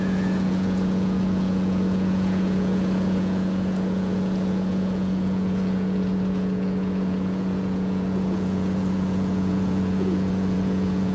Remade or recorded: remade